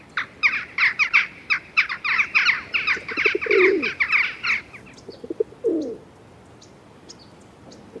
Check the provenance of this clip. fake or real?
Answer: real